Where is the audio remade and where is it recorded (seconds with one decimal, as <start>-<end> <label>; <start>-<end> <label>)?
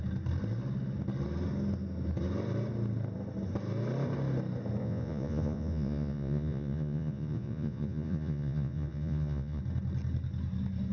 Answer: 0.0-4.8 recorded; 4.8-9.6 remade; 9.6-10.9 recorded